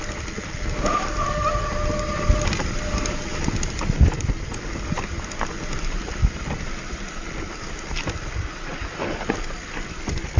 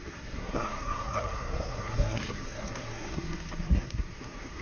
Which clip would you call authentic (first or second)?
first